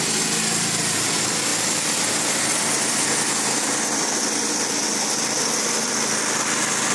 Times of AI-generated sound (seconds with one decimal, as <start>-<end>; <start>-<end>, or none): none